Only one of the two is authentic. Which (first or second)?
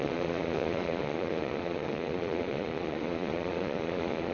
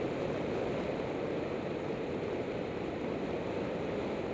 second